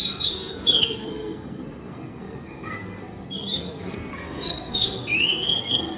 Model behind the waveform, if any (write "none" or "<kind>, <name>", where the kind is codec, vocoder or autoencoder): codec, SNAC